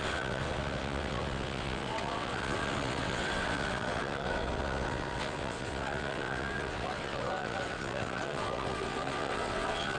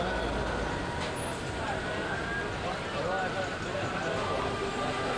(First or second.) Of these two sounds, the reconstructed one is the first